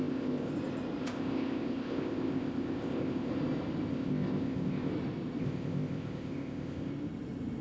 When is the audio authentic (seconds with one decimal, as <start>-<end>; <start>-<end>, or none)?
0.5-1.0; 3.3-3.9; 4.9-5.4; 6.9-7.6